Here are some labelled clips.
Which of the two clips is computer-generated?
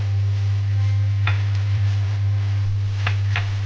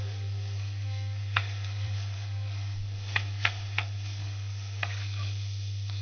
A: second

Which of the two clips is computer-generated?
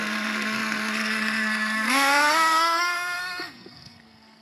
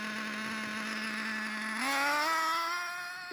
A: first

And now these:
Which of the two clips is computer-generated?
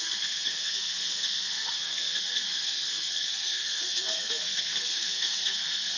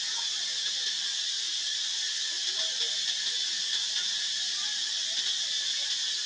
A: first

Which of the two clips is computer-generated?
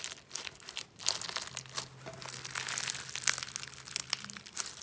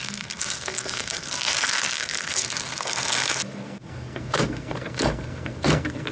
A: second